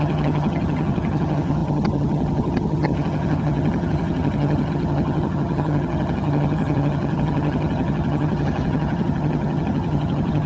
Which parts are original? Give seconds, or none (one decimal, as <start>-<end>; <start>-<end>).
none

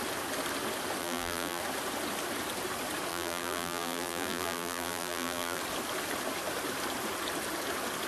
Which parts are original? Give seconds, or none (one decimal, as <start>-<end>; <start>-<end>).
0.0-1.0; 1.6-3.1; 5.6-8.1